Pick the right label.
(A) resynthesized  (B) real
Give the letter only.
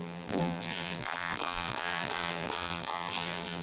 A